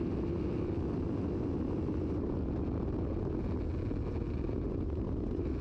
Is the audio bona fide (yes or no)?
yes